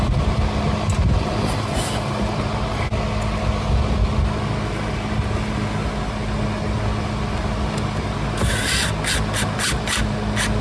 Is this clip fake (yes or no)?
no